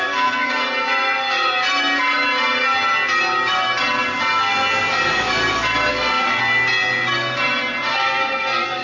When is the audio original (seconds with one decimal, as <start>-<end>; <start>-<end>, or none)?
0.6-5.9; 6.4-7.9